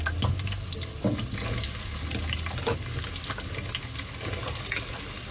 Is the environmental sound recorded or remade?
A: recorded